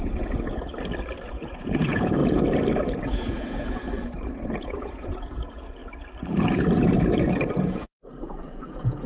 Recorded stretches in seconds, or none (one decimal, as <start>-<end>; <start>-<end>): 0.7-1.3; 2.2-3.0; 3.8-4.6; 5.8-7.5